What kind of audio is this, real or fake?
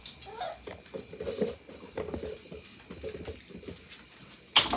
real